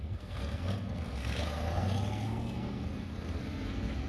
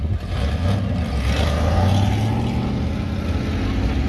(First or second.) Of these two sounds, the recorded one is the second